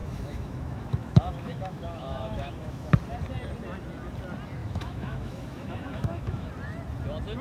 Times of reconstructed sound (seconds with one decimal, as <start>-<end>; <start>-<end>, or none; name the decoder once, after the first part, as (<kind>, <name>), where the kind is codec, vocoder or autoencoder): 0.0-2.9 (autoencoder, DAC-VAE); 4.6-6.5